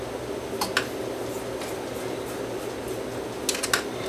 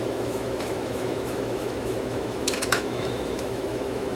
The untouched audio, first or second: first